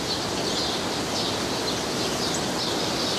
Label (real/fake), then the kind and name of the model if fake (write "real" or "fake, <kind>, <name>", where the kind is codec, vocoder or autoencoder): real